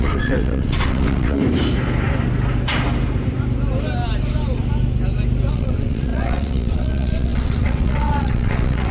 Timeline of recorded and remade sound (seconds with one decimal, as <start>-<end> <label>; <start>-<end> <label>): 0.0-1.4 remade; 1.4-5.5 recorded; 5.5-8.9 remade